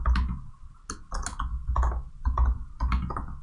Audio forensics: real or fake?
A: real